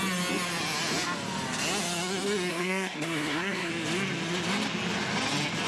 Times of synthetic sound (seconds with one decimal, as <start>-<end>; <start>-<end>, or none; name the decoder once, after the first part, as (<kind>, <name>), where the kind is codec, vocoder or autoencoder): 2.5-3.7 (codec, SNAC)